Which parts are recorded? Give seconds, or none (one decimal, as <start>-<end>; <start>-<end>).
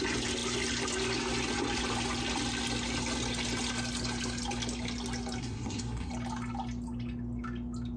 0.0-5.4; 6.1-8.0